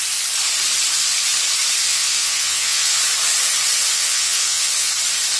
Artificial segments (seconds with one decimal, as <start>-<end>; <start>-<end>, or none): 1.9-3.0; 3.9-4.9